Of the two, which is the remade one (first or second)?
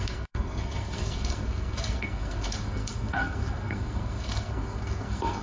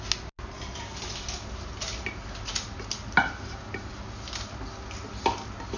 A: first